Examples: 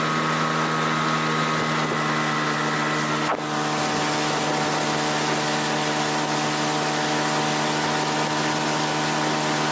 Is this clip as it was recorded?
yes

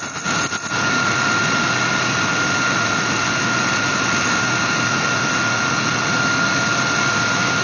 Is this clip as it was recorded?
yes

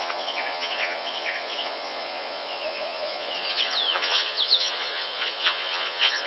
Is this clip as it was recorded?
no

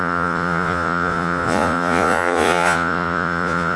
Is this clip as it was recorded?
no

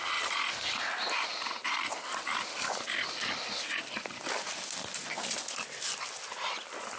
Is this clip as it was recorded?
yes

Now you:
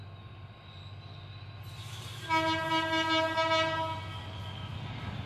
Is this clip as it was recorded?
yes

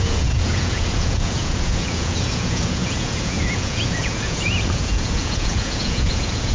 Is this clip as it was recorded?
no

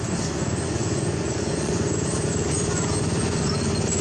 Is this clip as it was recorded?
no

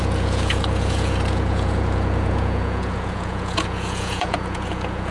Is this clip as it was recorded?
no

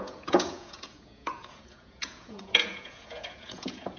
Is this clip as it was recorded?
no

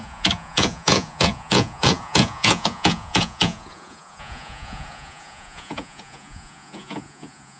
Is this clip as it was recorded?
no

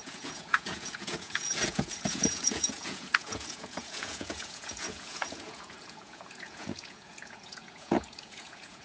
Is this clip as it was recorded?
no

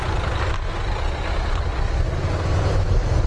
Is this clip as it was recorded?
yes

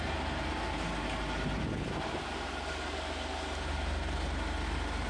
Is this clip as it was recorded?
yes